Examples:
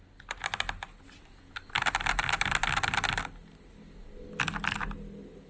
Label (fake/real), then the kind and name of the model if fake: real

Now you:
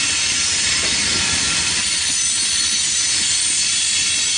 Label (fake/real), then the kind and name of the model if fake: real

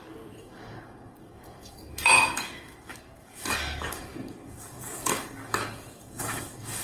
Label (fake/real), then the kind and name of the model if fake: fake, codec, DAC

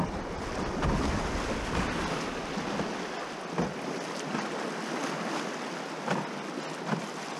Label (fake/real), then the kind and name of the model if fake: real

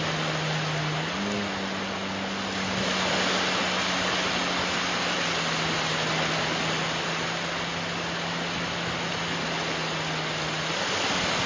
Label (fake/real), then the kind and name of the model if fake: real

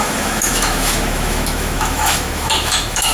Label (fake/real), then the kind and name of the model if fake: fake, autoencoder, DAC-VAE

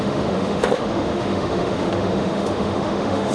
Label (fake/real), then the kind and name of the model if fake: fake, autoencoder, DAC-VAE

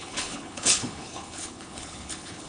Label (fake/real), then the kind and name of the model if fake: fake, codec, HILCodec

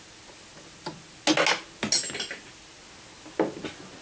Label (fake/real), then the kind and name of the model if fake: real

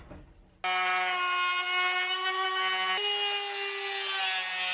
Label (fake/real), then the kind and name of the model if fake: real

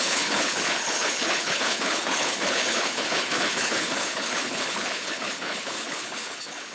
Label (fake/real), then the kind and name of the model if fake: fake, codec, HILCodec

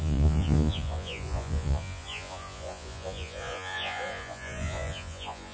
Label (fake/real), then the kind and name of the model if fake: fake, vocoder, Vocos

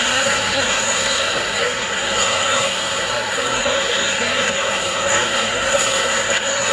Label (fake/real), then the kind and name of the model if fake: fake, codec, SNAC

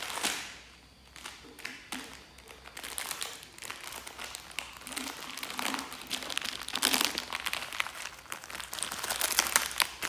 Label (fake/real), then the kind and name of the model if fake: real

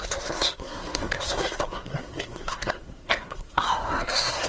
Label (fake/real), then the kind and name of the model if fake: fake, codec, SNAC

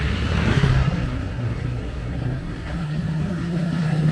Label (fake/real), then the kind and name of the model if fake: fake, codec, SNAC